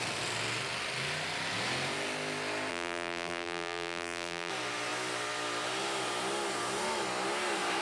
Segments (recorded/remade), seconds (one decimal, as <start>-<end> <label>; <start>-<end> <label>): 0.0-2.7 recorded; 2.7-4.5 remade; 4.5-7.8 recorded